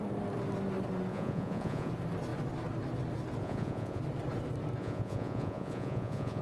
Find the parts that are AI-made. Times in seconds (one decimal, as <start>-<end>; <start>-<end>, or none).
1.1-1.9; 3.4-4.0; 4.8-6.4

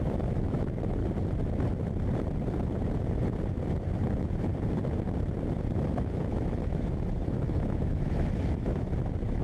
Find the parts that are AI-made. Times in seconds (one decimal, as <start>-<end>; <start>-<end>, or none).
0.0-1.0; 4.1-4.5; 6.0-9.4

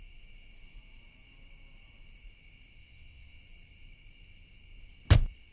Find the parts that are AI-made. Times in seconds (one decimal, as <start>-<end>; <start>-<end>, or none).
2.8-3.4

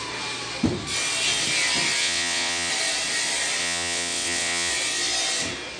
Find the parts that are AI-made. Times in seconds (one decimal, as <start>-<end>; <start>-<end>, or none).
2.0-2.7; 3.6-4.7

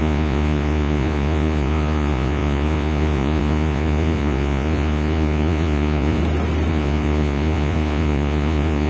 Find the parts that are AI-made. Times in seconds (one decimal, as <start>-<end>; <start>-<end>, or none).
0.0-6.2; 6.7-8.9